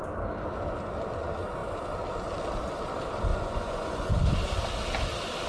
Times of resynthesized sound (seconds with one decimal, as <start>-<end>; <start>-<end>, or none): 3.3-4.1